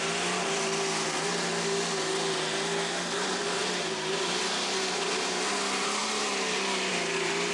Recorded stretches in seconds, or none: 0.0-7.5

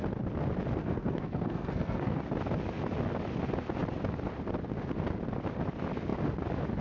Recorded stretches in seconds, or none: 0.0-0.8; 2.2-6.8